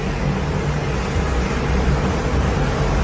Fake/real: real